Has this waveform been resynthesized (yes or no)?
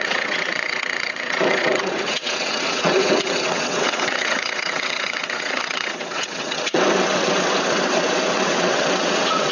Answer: yes